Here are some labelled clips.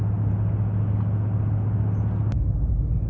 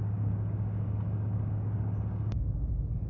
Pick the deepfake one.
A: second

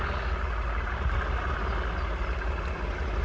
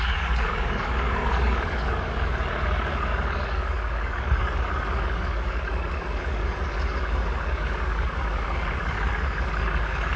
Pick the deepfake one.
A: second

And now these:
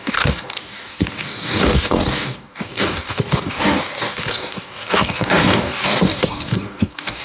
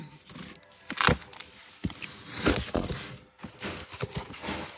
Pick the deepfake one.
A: first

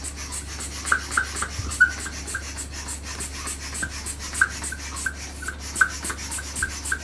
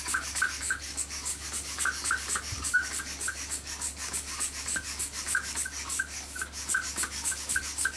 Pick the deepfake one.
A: second